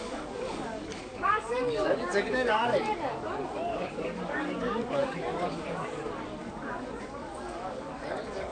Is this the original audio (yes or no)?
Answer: no